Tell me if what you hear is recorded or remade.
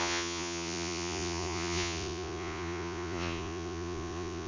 remade